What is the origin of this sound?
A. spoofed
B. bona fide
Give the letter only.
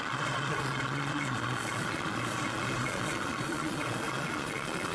A